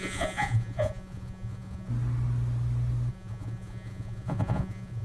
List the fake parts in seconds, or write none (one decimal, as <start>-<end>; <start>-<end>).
0.0-1.9; 3.1-5.0